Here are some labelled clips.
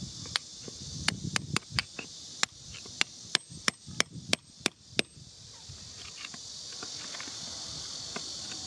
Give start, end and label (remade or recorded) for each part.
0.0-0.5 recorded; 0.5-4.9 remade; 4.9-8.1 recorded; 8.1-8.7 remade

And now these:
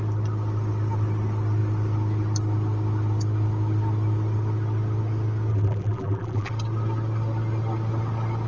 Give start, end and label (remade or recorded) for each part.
0.0-5.5 recorded; 5.5-6.5 remade; 6.5-8.5 recorded

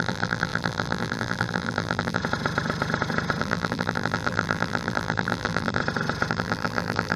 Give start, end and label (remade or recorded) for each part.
0.0-2.2 remade; 2.2-3.4 recorded; 3.4-5.8 remade; 5.8-6.3 recorded; 6.3-7.2 remade

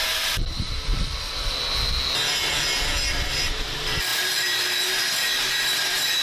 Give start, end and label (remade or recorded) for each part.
0.0-0.9 remade; 0.9-3.1 recorded; 3.1-6.2 remade

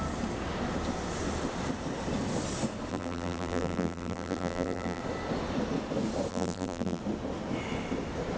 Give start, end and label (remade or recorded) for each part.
0.0-2.9 recorded; 2.9-5.0 remade; 5.0-6.3 recorded; 6.3-7.0 remade; 7.0-8.4 recorded